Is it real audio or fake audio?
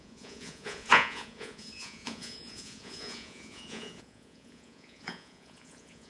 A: fake